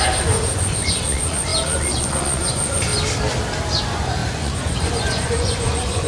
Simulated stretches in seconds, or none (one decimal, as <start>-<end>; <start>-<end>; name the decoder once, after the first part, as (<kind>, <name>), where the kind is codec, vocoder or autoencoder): 0.0-2.9 (vocoder, Vocos); 3.8-6.1